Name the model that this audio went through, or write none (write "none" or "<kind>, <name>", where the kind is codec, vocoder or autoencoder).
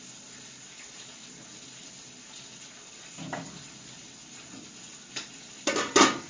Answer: none